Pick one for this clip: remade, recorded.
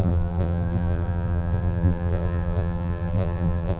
remade